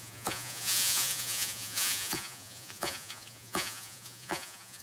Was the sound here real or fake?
fake